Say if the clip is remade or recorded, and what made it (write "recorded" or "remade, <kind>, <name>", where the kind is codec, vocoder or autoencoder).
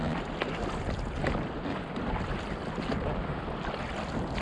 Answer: recorded